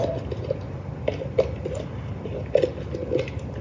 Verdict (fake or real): real